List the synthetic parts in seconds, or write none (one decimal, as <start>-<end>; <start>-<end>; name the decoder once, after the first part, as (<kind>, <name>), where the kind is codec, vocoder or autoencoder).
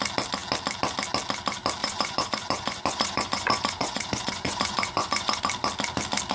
1.8-5.4 (vocoder, Vocos)